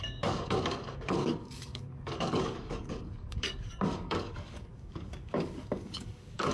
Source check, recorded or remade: remade